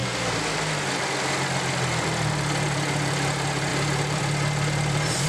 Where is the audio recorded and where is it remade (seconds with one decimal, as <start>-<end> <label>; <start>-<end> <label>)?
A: 0.0-1.0 remade; 1.0-3.7 recorded; 3.7-4.2 remade; 4.2-5.3 recorded